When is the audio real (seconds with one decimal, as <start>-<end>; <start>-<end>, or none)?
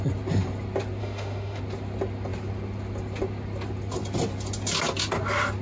0.0-1.0; 1.6-5.6